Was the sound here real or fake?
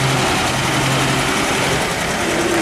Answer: real